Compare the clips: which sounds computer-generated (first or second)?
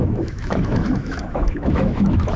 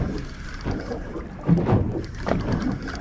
first